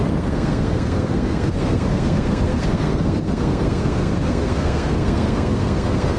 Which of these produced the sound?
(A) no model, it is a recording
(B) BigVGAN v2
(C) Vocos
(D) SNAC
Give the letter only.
D